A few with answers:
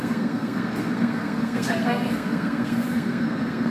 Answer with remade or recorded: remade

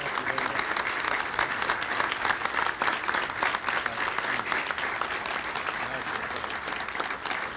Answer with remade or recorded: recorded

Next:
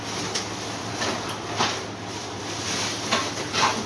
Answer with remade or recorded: recorded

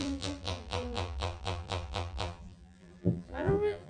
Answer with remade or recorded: remade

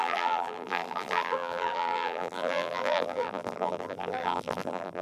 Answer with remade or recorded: remade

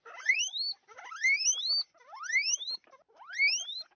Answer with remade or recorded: recorded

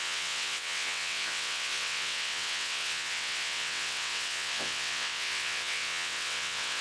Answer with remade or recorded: remade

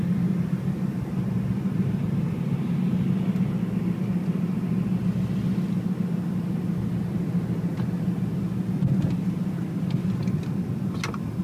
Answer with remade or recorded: recorded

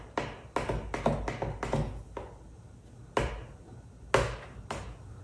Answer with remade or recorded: recorded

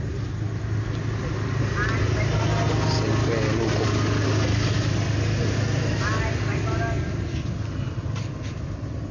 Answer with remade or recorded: recorded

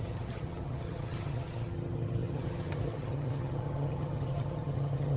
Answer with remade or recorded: remade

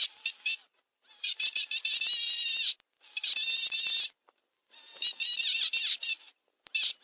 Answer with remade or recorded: recorded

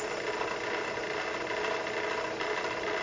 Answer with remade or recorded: recorded